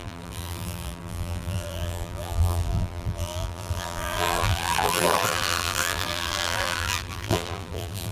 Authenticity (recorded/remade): remade